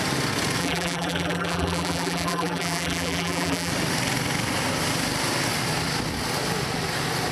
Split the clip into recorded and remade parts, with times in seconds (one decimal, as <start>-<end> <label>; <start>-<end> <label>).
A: 0.0-0.6 recorded; 0.6-3.7 remade; 3.7-7.3 recorded